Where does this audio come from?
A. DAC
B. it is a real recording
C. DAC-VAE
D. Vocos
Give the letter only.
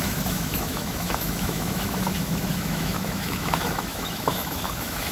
C